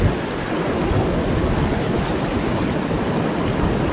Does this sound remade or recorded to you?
recorded